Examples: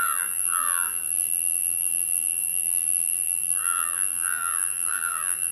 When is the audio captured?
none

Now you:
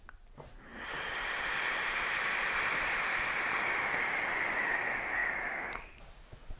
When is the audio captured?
0.0-0.7; 4.7-6.6

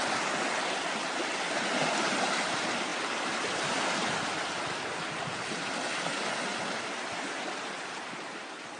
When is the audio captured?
0.0-2.9; 3.5-8.8

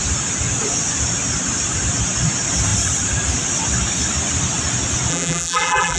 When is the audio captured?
0.0-5.1

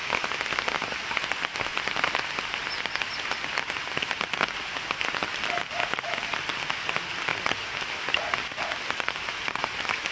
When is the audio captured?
0.0-10.1

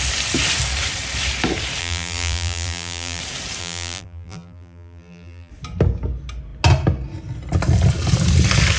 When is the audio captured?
0.0-1.8; 3.2-3.6; 5.5-8.8

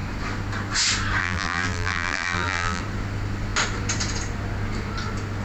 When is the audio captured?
0.0-1.2; 2.8-5.4